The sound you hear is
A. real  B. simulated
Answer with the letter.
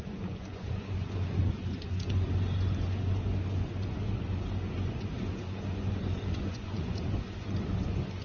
B